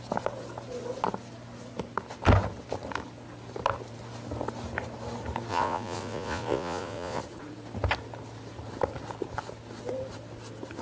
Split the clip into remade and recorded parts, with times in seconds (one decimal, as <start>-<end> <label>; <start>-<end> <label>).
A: 0.0-5.5 recorded; 5.5-7.2 remade; 7.2-10.8 recorded